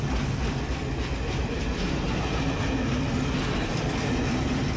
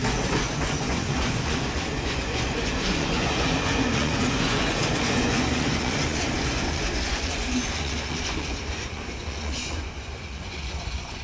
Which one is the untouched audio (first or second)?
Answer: first